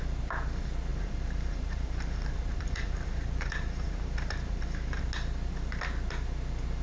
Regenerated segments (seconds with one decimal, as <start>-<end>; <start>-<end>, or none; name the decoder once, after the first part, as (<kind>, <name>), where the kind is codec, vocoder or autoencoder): 0.9-5.0 (vocoder, BigVGAN v2)

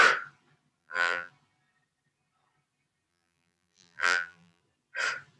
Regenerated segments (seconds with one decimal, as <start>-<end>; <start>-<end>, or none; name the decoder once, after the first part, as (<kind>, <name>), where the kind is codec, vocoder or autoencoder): 0.8-1.3 (vocoder, BigVGAN v2); 3.1-4.6

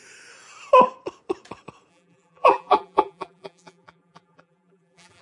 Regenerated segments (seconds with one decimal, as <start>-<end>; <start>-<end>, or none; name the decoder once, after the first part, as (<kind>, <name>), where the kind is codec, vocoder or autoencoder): 1.9-5.2 (vocoder, BigVGAN v2)

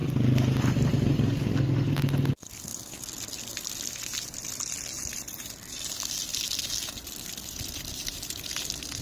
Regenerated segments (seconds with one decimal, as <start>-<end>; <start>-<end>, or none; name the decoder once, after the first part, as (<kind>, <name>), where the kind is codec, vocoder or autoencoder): none

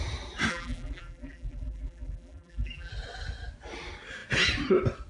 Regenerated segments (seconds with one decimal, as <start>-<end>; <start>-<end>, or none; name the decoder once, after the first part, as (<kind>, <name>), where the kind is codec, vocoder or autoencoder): 0.5-2.9 (vocoder, BigVGAN v2)